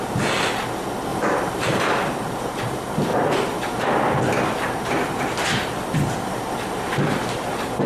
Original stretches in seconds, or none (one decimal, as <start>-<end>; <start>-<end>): 0.0-1.1; 1.8-3.1; 4.2-5.5